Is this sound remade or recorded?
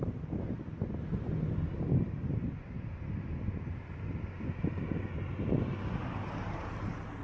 recorded